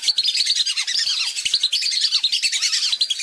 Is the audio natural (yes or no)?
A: yes